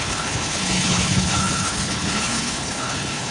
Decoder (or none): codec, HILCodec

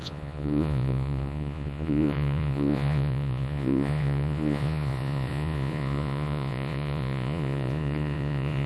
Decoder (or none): vocoder, Vocos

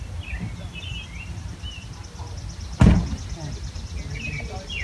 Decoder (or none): none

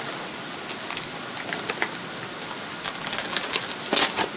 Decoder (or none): none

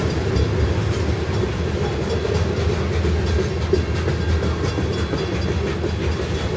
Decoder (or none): none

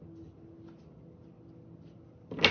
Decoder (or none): none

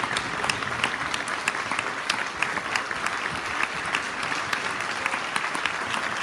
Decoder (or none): none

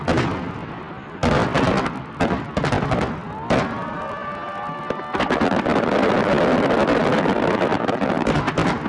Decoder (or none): none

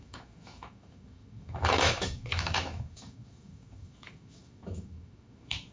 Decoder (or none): autoencoder, DAC-VAE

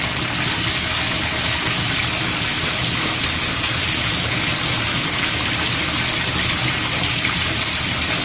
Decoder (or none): none